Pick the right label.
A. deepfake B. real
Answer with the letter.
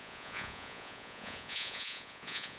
A